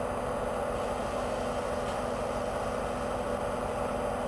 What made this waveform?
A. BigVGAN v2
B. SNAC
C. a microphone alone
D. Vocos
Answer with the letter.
C